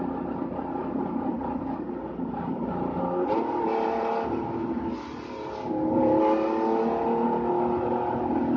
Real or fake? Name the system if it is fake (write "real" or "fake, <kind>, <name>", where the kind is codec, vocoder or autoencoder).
real